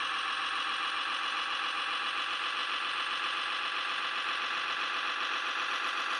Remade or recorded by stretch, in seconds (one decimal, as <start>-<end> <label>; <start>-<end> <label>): 0.0-6.2 recorded